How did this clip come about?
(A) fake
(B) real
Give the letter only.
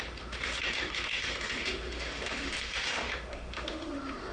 A